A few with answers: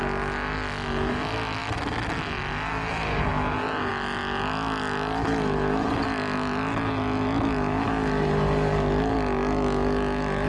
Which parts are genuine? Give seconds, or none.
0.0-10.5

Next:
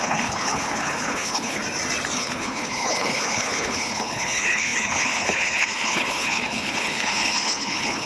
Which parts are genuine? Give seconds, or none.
1.6-2.2